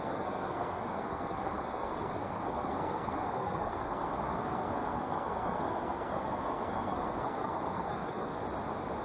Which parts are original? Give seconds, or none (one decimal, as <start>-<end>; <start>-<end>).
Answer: 8.4-9.0